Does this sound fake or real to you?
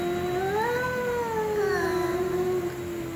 real